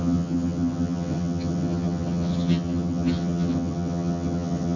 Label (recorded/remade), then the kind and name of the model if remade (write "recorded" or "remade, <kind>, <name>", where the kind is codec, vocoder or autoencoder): remade, vocoder, HiFi-GAN